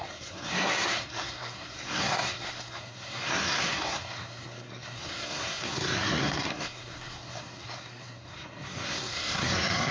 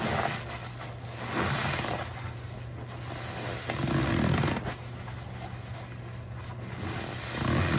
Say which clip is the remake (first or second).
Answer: first